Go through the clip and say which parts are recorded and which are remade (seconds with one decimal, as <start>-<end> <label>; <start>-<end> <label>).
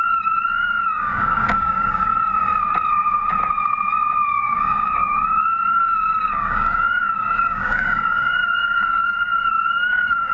0.0-2.1 remade; 2.1-4.3 recorded; 4.3-10.3 remade